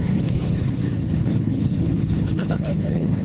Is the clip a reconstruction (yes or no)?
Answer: yes